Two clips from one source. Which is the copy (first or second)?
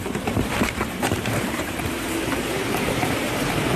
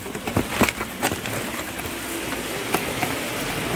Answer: first